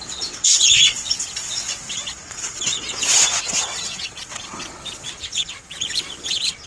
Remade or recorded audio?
remade